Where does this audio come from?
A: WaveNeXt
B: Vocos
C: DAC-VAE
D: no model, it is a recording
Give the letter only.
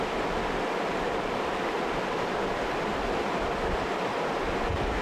D